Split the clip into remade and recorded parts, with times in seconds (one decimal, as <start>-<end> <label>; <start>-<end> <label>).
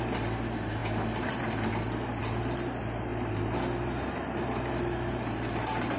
0.0-6.0 recorded